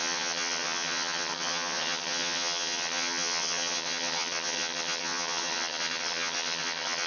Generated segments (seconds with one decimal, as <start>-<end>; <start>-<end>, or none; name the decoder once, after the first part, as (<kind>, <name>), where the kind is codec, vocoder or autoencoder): 0.0-7.1 (vocoder, HiFi-GAN)